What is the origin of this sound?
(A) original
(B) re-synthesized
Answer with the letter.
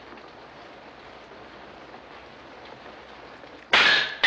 A